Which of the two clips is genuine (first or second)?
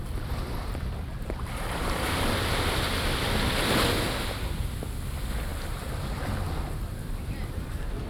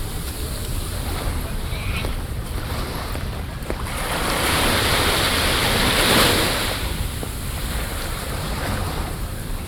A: first